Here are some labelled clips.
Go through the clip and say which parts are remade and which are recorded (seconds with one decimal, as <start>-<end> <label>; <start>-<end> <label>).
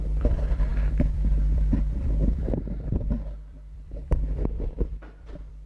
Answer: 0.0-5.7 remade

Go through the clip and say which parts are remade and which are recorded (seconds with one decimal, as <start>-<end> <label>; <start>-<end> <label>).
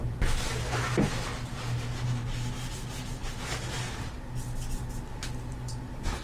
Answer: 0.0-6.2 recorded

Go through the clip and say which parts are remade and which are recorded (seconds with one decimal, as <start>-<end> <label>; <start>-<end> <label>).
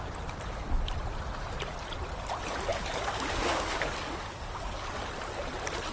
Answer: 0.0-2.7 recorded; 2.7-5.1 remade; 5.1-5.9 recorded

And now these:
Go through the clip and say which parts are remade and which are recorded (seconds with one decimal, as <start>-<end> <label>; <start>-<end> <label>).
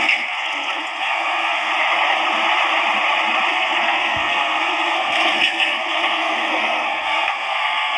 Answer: 0.0-1.7 remade; 1.7-3.5 recorded; 3.5-8.0 remade